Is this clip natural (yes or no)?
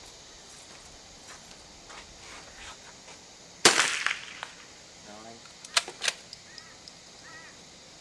yes